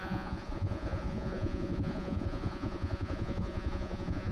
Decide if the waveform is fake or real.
fake